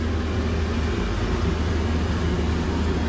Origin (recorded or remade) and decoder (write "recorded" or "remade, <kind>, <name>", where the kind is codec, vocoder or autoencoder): recorded